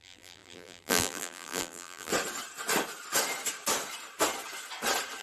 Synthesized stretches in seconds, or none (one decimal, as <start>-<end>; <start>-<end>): 0.0-2.1

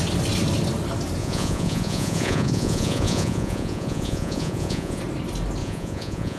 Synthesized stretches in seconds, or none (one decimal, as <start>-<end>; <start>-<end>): 1.2-5.0; 5.6-6.4